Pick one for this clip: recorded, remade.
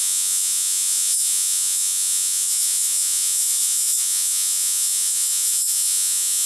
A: remade